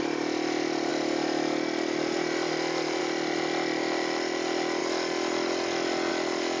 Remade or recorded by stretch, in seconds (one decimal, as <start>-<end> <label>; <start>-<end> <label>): 0.0-6.6 recorded